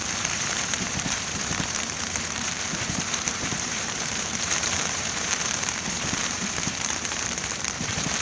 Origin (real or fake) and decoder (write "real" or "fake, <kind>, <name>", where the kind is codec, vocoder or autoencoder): fake, vocoder, BigVGAN v2